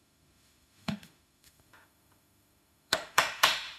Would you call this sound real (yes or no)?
no